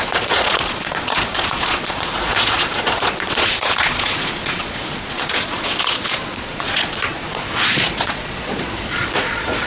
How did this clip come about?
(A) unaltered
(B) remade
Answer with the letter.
B